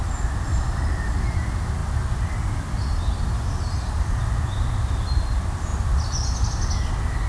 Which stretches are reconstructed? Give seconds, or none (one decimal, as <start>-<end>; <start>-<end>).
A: 0.0-0.7; 1.8-2.3; 5.7-6.5